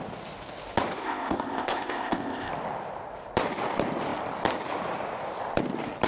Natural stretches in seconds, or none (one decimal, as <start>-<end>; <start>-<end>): 0.0-1.0; 2.5-6.1